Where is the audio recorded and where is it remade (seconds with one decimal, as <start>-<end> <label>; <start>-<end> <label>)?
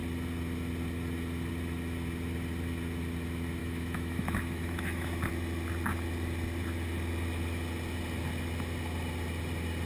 0.0-3.6 recorded; 3.6-5.3 remade; 5.3-9.9 recorded